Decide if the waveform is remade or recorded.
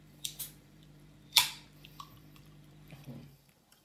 remade